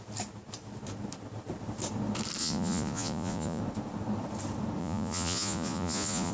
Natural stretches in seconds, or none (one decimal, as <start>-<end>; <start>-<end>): 0.0-2.4; 3.6-4.8